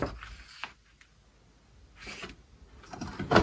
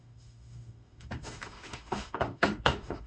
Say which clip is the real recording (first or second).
first